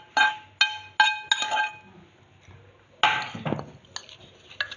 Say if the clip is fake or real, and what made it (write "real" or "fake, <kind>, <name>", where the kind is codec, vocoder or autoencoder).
real